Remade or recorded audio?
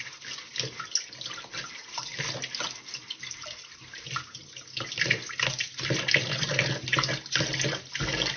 recorded